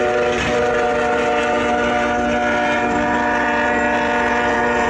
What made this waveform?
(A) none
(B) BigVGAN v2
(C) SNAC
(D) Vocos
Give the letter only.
A